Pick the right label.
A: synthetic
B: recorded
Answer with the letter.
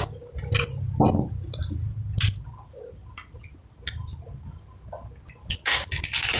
B